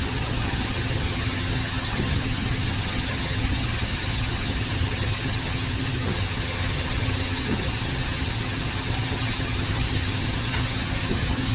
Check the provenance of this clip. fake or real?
fake